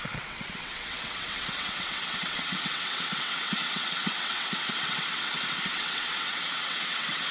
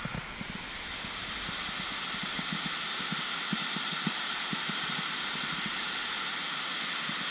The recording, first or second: second